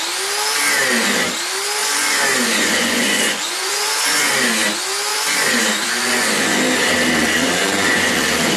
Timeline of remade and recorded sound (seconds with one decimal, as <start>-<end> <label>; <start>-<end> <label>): 0.0-1.8 recorded; 1.8-4.3 remade; 4.3-5.1 recorded; 5.1-5.6 remade; 5.6-6.0 recorded; 6.0-6.6 remade; 6.6-7.2 recorded; 7.2-8.6 remade